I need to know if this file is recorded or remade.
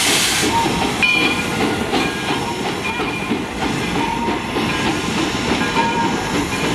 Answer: remade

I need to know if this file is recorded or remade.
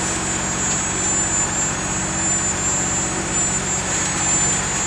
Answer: recorded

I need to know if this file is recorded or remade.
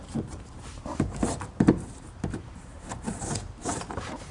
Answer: remade